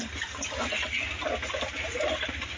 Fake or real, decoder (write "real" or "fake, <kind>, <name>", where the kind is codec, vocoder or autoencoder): real